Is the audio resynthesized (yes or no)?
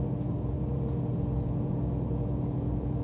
yes